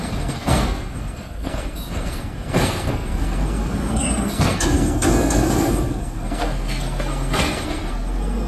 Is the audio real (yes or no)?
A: no